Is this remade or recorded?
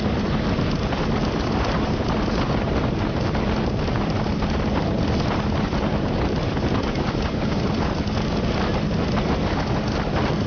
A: recorded